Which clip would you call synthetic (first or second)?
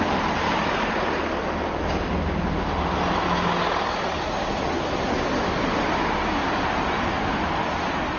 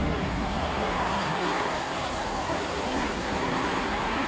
second